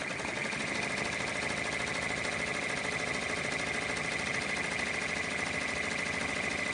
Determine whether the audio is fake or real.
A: real